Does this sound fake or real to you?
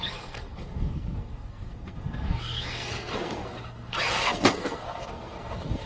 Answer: fake